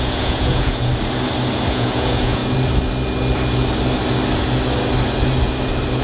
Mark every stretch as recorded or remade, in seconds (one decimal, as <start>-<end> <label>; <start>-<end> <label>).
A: 0.0-0.9 remade; 0.9-1.7 recorded; 1.7-2.4 remade; 2.4-6.0 recorded